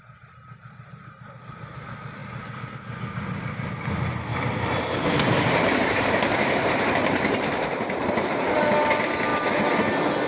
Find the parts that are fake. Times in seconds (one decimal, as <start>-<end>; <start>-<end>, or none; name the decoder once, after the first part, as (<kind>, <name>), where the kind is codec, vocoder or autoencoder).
4.3-8.6 (vocoder, BigVGAN v2)